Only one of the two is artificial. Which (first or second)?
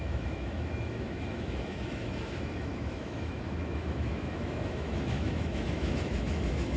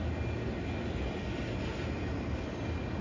first